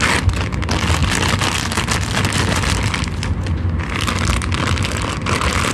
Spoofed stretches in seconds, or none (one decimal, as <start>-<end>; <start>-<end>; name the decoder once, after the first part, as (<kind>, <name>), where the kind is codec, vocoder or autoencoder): none